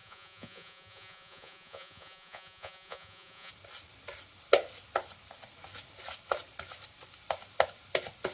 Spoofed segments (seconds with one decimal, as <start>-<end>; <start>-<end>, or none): 0.0-3.5